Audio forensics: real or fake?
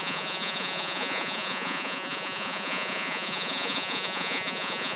fake